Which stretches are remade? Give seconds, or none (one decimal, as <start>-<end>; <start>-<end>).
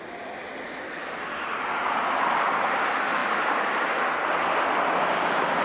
none